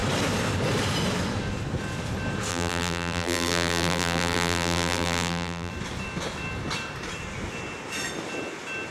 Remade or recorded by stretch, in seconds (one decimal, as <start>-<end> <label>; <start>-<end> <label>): 0.0-2.5 recorded; 2.5-5.7 remade; 5.7-8.9 recorded